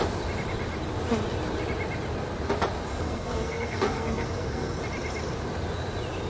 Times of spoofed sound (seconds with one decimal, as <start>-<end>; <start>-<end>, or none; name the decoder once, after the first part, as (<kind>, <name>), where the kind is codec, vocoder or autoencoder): 2.9-4.8 (codec, SNAC)